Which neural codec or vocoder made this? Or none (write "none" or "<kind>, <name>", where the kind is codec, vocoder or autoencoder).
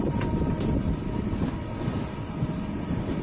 none